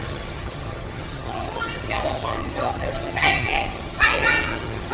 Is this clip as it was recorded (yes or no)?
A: no